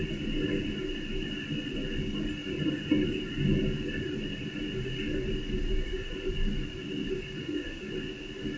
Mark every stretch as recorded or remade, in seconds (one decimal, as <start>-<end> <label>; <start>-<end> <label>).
0.0-7.4 recorded; 7.4-7.9 remade; 7.9-8.6 recorded